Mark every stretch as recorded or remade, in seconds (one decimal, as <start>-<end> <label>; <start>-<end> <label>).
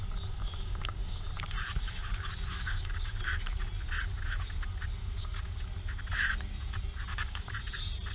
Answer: 0.0-0.4 recorded; 0.4-1.3 remade; 1.3-2.5 recorded; 2.5-3.4 remade; 3.4-5.0 recorded; 5.0-5.6 remade; 5.6-7.1 recorded; 7.1-7.6 remade; 7.6-8.1 recorded